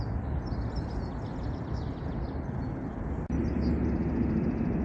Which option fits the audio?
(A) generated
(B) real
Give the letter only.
B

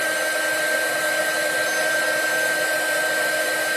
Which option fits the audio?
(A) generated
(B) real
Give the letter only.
B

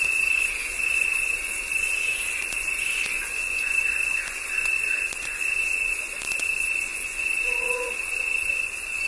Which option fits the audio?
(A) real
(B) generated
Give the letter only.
B